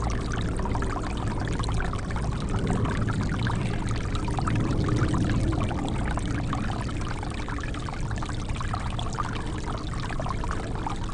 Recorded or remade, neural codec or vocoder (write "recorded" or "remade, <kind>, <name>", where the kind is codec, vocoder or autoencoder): recorded